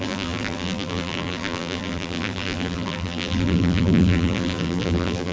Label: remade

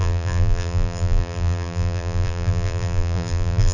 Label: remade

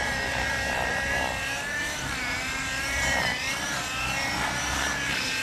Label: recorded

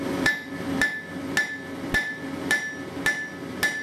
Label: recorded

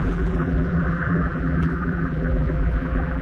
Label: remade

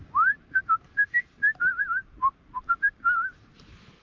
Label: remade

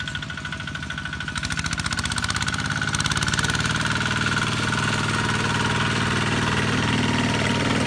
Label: recorded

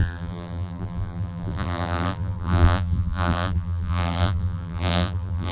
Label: remade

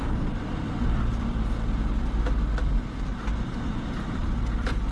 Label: remade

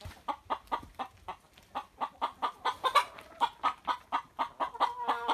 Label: recorded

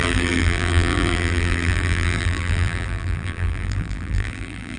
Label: remade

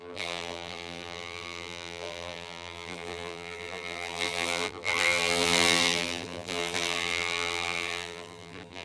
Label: remade